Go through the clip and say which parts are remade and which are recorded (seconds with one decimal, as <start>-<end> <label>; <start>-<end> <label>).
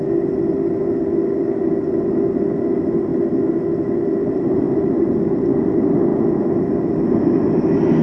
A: 0.0-8.0 recorded